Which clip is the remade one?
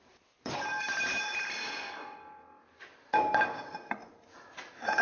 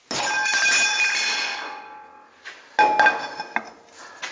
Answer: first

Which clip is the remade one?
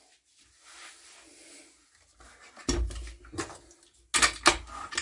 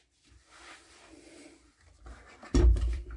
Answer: second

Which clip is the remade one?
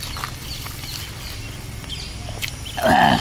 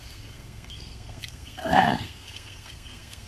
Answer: second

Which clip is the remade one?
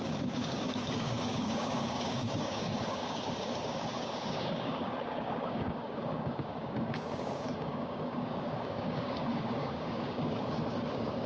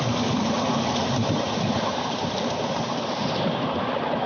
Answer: first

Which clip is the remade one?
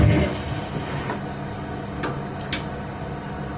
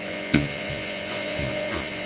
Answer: second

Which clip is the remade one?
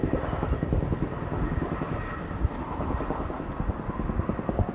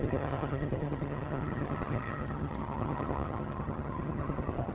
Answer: second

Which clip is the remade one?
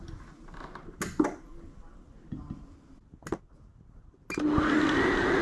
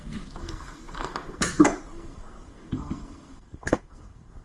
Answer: second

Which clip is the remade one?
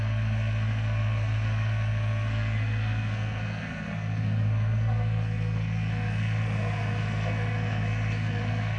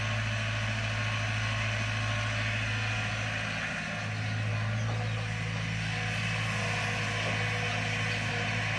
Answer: first